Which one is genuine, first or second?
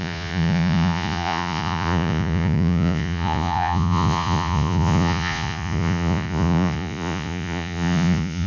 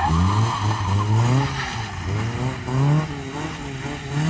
second